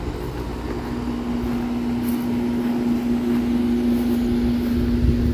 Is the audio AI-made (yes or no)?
no